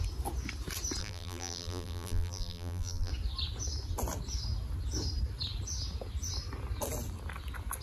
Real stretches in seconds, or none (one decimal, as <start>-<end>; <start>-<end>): 0.0-1.0; 3.1-7.8